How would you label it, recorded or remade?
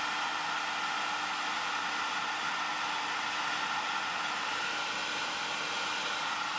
recorded